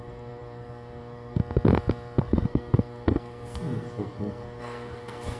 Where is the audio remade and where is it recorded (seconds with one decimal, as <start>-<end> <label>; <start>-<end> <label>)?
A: 0.0-1.4 remade; 1.4-2.2 recorded; 2.2-5.4 remade